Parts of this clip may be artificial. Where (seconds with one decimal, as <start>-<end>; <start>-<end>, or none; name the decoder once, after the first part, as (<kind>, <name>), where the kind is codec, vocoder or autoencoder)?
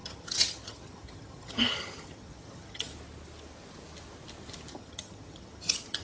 0.0-2.9 (vocoder, HiFi-GAN); 4.7-6.0